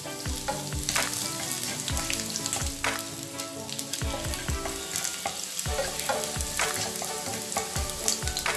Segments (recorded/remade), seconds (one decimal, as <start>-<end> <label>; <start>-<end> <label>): 0.0-8.6 recorded